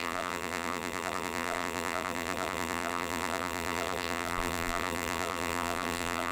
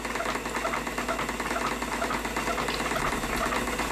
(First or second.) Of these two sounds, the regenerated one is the first